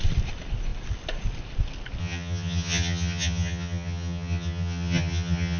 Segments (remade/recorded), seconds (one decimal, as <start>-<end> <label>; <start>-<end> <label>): 0.0-2.0 recorded; 2.0-5.6 remade